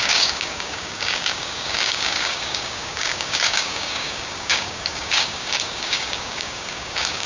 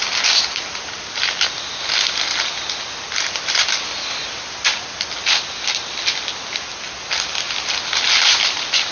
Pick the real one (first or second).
second